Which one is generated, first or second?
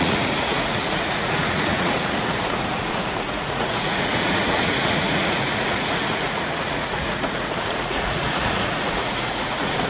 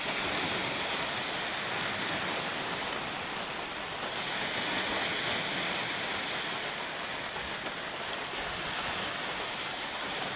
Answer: first